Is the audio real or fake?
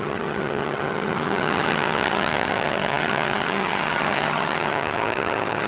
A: fake